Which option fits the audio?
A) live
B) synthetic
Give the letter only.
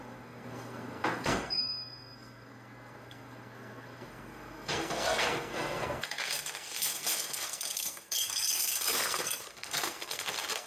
B